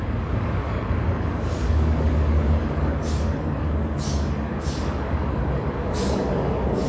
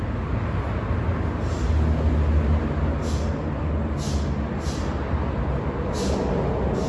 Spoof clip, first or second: first